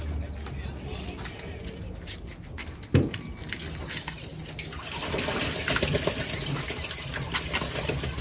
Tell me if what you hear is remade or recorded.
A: recorded